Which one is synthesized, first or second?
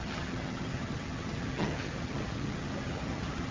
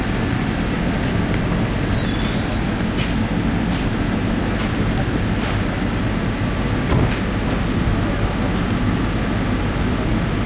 first